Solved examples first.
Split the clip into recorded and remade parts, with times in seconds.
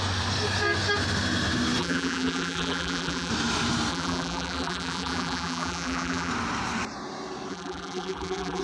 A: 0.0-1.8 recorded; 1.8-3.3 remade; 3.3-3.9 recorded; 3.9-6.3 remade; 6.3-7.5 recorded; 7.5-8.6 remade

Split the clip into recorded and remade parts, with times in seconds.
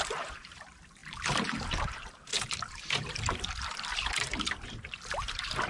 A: 0.0-5.7 remade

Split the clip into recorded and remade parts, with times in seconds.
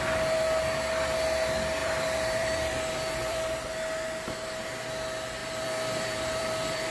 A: 0.0-1.8 recorded; 1.8-3.7 remade; 3.7-5.4 recorded; 5.4-6.9 remade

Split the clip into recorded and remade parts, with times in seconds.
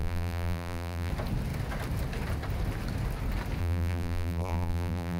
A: 0.0-1.1 remade; 1.1-3.6 recorded; 3.6-5.2 remade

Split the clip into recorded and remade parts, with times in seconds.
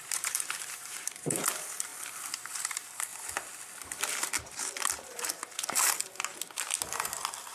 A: 0.0-1.9 remade; 1.9-2.5 recorded; 2.5-3.1 remade; 3.1-7.5 recorded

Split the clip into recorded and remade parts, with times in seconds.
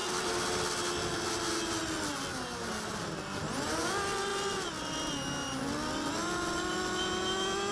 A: 0.0-7.7 recorded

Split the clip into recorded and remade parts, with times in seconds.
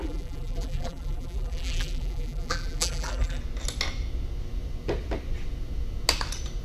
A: 0.0-3.4 remade; 3.4-6.6 recorded